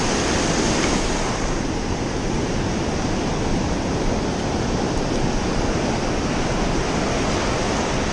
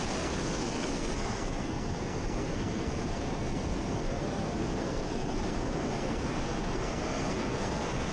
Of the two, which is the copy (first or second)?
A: second